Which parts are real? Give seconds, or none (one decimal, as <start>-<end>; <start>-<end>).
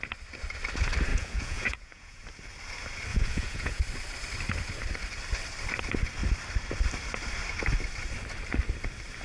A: 0.0-1.1; 2.2-3.1; 3.8-9.2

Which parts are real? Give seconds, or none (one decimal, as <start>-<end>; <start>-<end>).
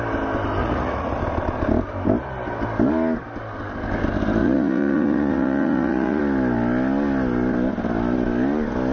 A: 0.0-0.6; 1.2-4.4; 6.2-8.9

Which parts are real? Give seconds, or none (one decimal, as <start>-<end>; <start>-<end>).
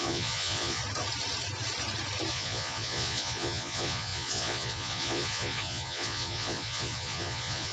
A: 0.8-2.3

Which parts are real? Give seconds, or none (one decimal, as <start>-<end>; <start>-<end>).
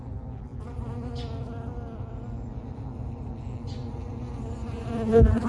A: 0.0-4.6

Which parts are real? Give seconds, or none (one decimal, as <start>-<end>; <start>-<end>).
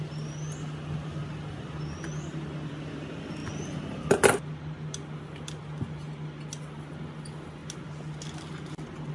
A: 0.0-9.1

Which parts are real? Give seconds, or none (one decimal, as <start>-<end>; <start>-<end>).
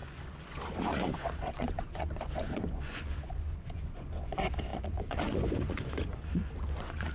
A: none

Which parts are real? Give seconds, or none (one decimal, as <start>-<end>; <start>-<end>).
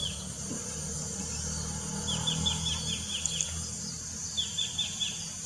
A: 0.0-5.5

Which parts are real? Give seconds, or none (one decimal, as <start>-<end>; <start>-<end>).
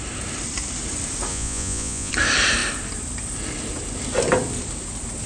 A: 0.0-1.3; 2.1-5.3